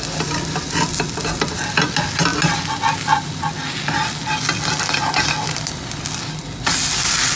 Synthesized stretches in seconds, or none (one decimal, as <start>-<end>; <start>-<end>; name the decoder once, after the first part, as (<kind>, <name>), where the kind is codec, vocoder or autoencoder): none